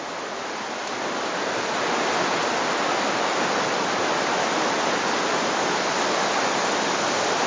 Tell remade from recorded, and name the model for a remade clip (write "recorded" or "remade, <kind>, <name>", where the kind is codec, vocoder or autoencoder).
recorded